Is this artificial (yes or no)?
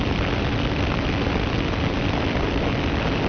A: no